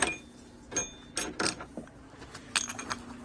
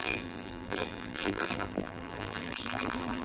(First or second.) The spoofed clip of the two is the second